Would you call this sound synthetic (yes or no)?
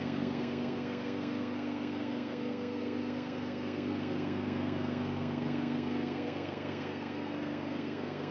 yes